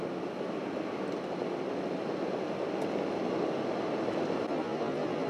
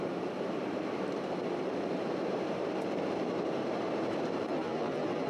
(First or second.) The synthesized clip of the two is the second